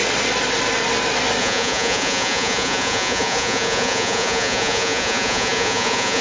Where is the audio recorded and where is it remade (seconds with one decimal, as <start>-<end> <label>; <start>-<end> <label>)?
0.0-1.4 recorded; 1.4-6.2 remade